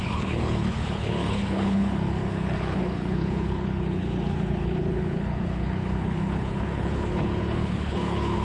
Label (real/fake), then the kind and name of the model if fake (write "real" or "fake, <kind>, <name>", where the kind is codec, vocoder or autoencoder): fake, codec, HILCodec